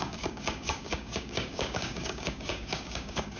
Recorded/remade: remade